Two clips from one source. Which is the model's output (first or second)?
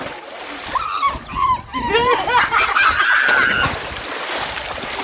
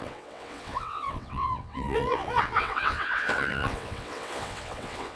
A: second